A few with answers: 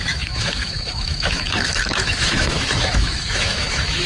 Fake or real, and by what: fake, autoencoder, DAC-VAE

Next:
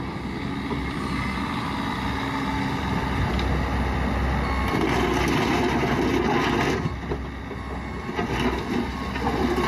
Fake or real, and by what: real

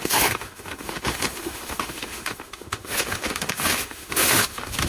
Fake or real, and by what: fake, autoencoder, DAC-VAE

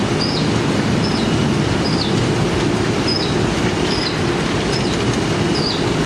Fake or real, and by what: real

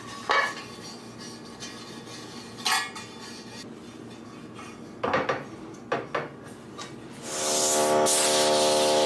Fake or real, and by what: real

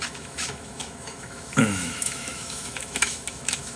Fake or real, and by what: fake, autoencoder, DAC-VAE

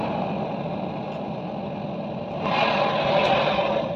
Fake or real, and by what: real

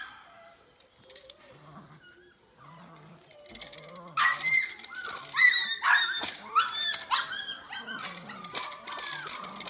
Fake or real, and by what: real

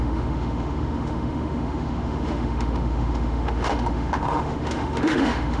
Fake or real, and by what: fake, autoencoder, DAC-VAE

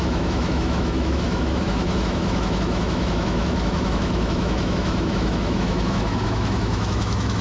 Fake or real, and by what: fake, autoencoder, DAC-VAE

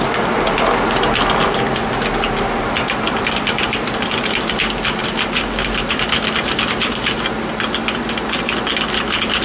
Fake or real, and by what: real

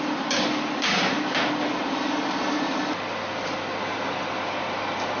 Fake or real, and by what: real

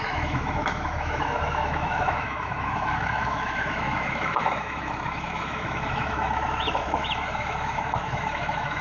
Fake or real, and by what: fake, autoencoder, DAC-VAE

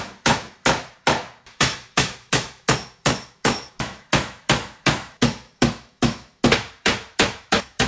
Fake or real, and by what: fake, autoencoder, DAC-VAE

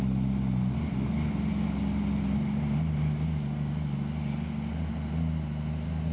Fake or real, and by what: real